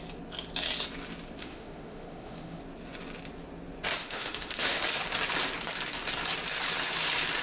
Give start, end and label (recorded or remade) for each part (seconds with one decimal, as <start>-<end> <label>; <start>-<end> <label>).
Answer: 0.0-1.4 recorded; 1.4-2.6 remade; 2.6-4.0 recorded; 4.0-4.8 remade; 4.8-7.4 recorded